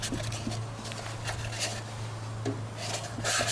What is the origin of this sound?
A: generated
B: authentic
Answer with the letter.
B